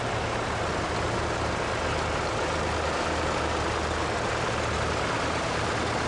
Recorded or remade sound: recorded